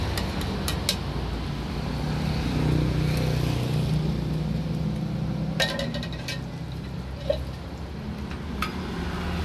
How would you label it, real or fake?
real